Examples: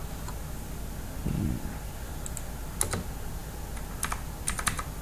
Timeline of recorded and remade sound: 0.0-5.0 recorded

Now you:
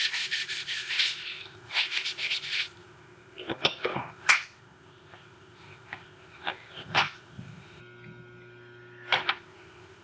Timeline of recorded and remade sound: 0.0-7.8 remade; 7.8-9.2 recorded; 9.2-10.0 remade

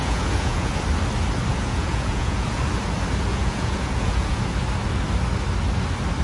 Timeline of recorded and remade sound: 0.0-0.7 remade; 0.7-1.5 recorded; 1.5-2.6 remade; 2.6-3.3 recorded; 3.3-4.4 remade; 4.4-6.2 recorded

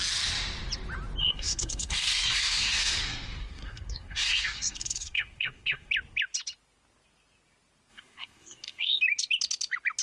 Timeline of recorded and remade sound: 0.0-1.2 recorded; 1.2-5.9 remade; 5.9-7.9 recorded; 7.9-9.0 remade; 9.0-10.0 recorded

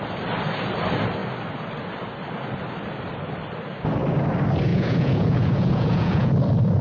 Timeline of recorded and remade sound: 0.0-4.7 recorded; 4.7-6.3 remade; 6.3-6.8 recorded

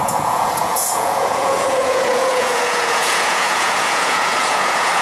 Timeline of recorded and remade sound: 0.0-5.0 remade